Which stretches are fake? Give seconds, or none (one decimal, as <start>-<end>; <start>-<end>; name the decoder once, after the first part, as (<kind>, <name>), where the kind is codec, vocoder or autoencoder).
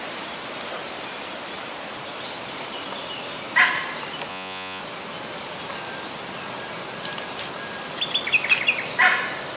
4.3-4.8 (vocoder, Vocos)